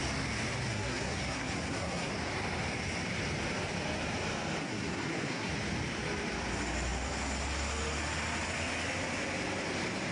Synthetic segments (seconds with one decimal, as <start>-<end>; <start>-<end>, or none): 0.7-2.1; 4.6-5.5